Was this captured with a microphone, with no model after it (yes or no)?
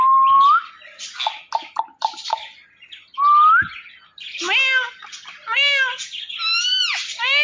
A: yes